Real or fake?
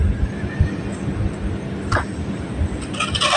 real